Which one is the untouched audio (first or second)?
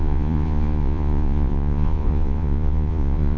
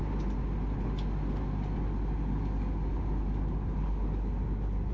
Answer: second